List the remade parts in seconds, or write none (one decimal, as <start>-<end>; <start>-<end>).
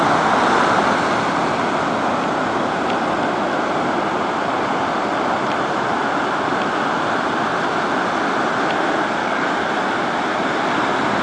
9.2-9.7